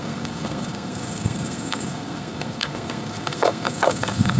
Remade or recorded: remade